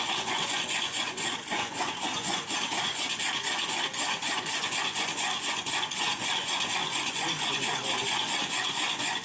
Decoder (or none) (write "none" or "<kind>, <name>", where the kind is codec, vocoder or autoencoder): vocoder, Vocos